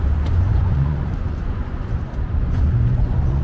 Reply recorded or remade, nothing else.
remade